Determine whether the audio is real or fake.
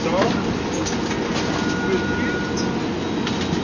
real